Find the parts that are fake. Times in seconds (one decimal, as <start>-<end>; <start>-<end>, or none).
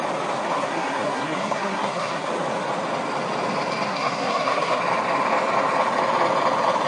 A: 0.4-2.3; 3.9-4.8